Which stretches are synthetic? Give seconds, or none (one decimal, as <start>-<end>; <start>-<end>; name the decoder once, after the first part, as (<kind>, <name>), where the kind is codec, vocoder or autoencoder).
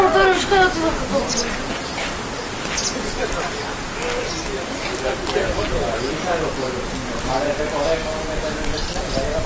4.5-5.1 (vocoder, BigVGAN v2); 7.0-7.6